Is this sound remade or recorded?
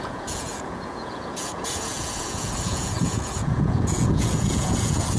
remade